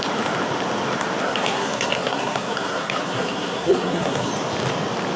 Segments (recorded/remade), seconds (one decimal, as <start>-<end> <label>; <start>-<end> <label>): 0.0-1.2 recorded; 1.2-4.3 remade; 4.3-5.2 recorded